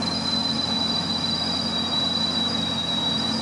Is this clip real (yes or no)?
no